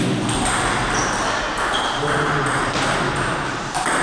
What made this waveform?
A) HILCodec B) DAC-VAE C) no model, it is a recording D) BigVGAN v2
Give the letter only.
C